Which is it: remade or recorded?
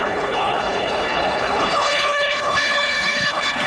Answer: remade